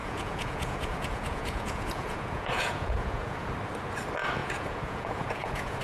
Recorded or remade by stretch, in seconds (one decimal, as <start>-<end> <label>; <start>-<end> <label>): 0.0-3.5 remade; 3.5-4.4 recorded; 4.4-5.8 remade